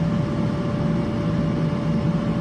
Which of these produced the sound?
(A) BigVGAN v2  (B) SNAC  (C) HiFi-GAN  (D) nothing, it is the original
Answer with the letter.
D